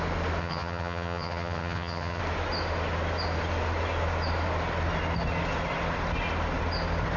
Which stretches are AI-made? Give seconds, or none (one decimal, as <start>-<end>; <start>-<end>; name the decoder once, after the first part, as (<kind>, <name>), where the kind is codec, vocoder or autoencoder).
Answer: 0.4-2.2 (vocoder, HiFi-GAN)